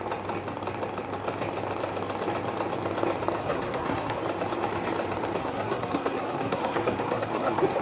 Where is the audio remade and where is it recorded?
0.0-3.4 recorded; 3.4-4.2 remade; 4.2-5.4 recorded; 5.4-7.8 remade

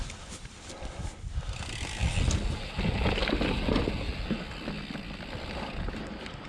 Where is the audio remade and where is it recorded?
0.0-6.5 recorded

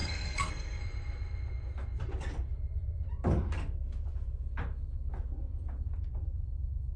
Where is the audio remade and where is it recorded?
0.0-0.8 remade; 0.8-7.0 recorded

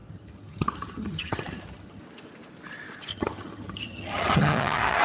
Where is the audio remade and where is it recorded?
0.0-2.0 remade; 2.0-3.1 recorded; 3.1-5.0 remade